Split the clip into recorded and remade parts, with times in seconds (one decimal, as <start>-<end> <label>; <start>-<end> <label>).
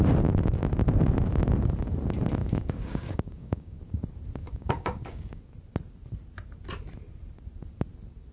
0.0-2.4 recorded; 2.4-3.8 remade; 3.8-4.4 recorded; 4.4-5.4 remade; 5.4-8.3 recorded